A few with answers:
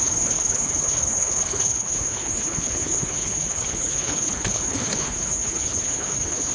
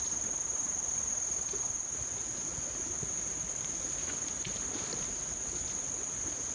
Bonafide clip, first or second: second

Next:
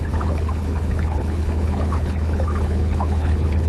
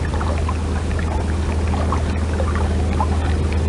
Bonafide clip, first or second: second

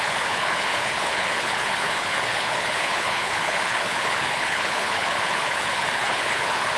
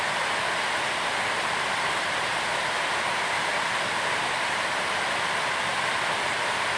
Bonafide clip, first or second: second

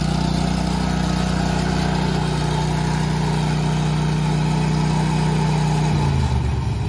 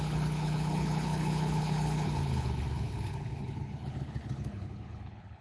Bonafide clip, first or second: first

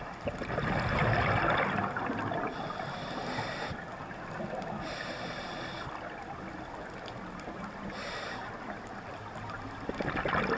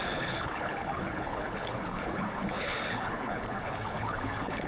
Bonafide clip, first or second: first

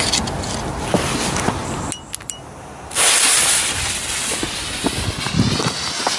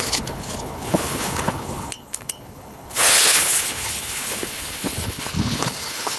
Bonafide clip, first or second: first